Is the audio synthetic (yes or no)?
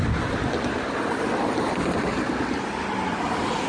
no